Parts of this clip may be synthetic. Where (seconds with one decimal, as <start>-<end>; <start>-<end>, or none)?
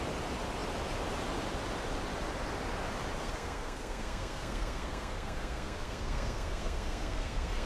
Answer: 3.2-7.7